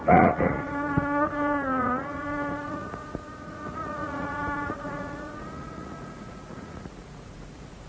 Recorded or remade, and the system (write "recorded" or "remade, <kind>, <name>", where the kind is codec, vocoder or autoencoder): remade, vocoder, Vocos